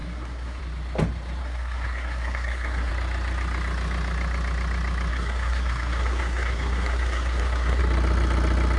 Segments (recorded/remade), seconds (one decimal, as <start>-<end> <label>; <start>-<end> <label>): 0.0-0.6 remade; 0.6-1.4 recorded; 1.4-2.9 remade; 2.9-5.1 recorded; 5.1-7.8 remade; 7.8-8.8 recorded